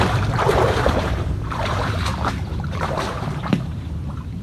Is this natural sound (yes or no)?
no